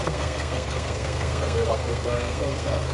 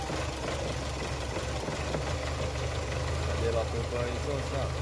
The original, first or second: second